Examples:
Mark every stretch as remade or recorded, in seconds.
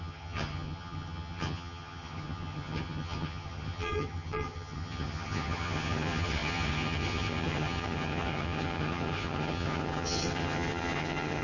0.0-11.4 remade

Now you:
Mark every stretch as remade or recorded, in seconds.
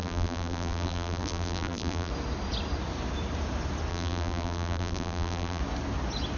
0.0-2.1 remade; 2.1-3.9 recorded; 3.9-5.6 remade; 5.6-6.4 recorded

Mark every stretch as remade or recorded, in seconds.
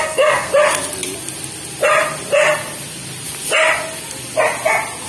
0.0-0.5 remade; 0.5-5.1 recorded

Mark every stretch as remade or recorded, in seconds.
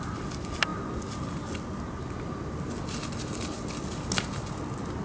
0.0-5.0 recorded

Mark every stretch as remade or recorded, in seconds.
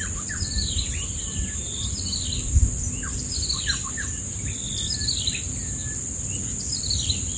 0.0-0.6 recorded; 0.6-2.0 remade; 2.0-3.7 recorded; 3.7-4.3 remade; 4.3-7.4 recorded